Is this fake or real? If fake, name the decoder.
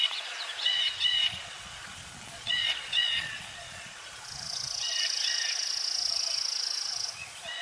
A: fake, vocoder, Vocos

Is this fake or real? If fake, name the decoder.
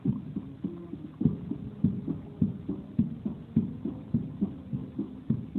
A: real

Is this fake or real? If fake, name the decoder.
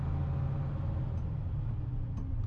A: real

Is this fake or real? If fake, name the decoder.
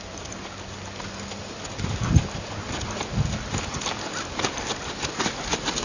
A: real